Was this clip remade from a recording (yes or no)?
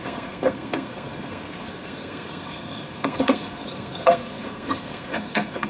yes